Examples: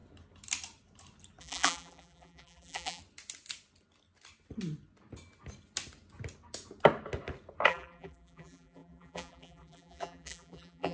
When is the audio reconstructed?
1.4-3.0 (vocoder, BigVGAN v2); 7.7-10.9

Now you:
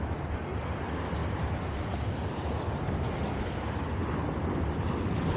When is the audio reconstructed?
none

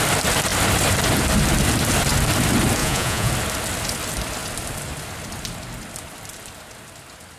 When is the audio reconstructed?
2.8-3.3 (vocoder, Vocos)

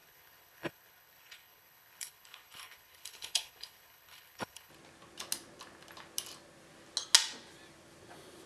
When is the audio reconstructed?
0.0-4.7 (codec, HILCodec)

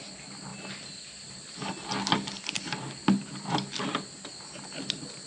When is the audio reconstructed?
none

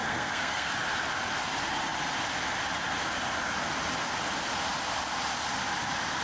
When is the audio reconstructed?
0.0-0.7 (codec, SNAC)

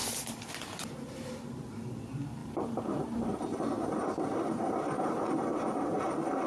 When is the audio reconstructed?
2.4-6.5 (vocoder, BigVGAN v2)

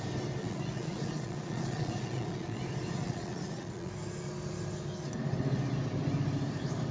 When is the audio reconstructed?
0.4-2.6 (vocoder, Vocos); 3.0-3.9